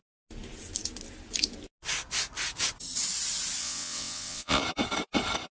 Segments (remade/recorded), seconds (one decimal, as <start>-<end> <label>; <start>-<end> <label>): 0.0-3.6 recorded; 3.6-4.6 remade; 4.6-5.6 recorded